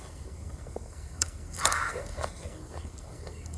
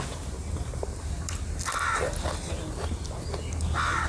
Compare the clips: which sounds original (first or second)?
second